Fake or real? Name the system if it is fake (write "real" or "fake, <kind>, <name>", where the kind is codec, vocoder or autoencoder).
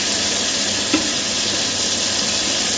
real